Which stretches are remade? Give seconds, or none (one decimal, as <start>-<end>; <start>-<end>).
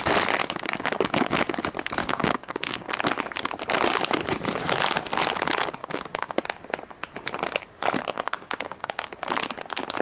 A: 0.4-1.4; 2.0-2.9; 5.8-6.3; 8.1-9.2